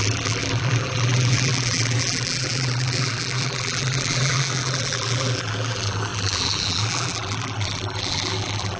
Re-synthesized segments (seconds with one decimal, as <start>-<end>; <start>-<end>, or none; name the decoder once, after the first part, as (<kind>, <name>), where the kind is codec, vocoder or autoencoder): 0.0-8.8 (vocoder, BigVGAN v2)

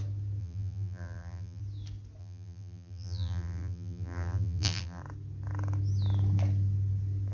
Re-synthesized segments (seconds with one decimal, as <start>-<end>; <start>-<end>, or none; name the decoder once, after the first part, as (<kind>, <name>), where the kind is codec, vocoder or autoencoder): 0.4-1.6 (vocoder, BigVGAN v2); 2.2-5.0

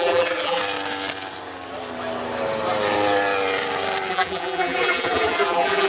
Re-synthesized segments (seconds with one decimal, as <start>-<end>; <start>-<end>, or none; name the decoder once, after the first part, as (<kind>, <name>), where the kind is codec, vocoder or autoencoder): 0.0-0.6 (vocoder, BigVGAN v2); 4.1-5.9

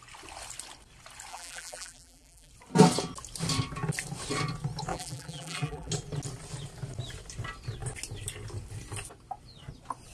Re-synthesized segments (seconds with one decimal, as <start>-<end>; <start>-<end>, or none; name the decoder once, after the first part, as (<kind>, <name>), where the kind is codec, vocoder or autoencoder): 1.3-2.5 (vocoder, BigVGAN v2); 4.9-5.9